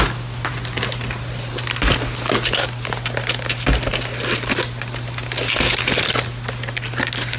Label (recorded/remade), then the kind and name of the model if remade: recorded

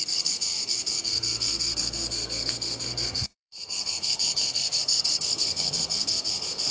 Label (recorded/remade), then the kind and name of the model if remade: remade, codec, SNAC